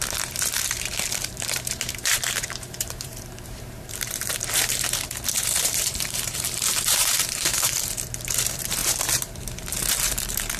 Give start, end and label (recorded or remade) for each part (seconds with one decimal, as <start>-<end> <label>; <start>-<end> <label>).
0.0-10.6 remade